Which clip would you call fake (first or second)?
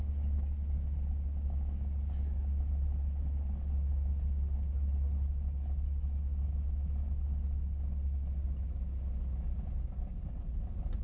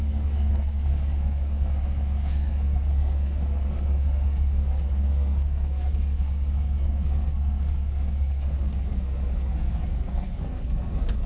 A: second